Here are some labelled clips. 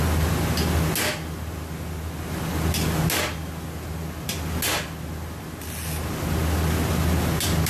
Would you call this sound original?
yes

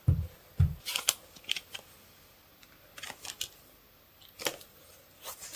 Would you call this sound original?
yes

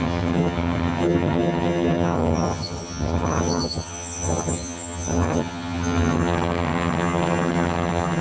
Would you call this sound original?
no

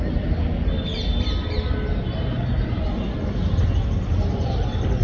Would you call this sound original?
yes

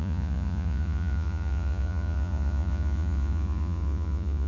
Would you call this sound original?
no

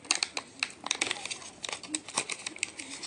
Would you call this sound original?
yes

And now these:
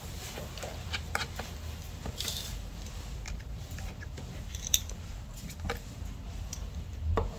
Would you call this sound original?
no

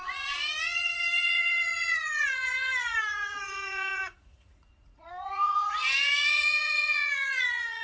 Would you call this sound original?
no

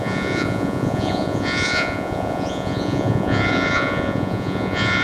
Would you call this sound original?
no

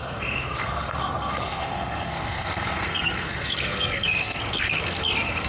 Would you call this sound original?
no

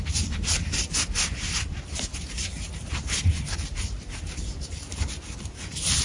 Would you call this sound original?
no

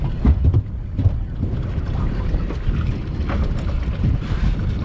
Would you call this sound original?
yes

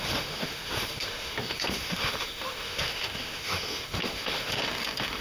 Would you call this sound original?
no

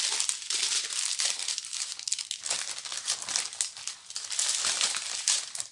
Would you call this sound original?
yes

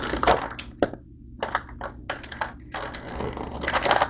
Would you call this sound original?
yes